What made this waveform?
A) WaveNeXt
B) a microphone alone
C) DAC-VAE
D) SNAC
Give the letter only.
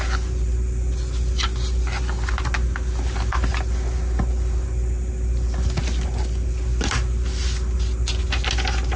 B